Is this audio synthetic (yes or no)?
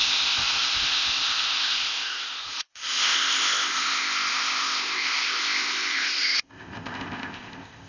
yes